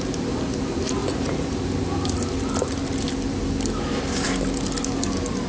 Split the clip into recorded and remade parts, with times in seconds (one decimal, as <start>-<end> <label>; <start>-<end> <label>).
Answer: 0.0-5.5 recorded